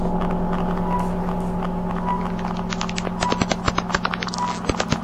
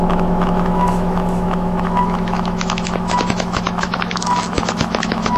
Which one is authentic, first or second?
first